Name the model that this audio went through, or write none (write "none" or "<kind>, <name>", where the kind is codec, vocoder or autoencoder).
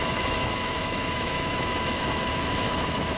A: autoencoder, DAC-VAE